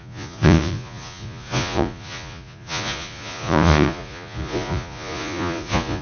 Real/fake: fake